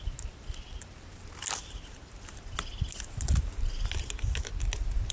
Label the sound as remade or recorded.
recorded